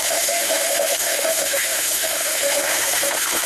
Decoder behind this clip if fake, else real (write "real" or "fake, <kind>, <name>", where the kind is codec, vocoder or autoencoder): fake, autoencoder, DAC-VAE